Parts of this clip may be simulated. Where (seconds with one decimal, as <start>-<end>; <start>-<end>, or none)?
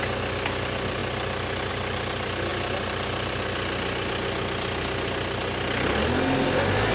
none